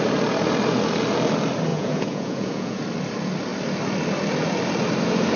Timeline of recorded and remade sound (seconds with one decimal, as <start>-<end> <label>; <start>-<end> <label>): 0.0-1.7 recorded; 1.7-2.8 remade; 2.8-5.4 recorded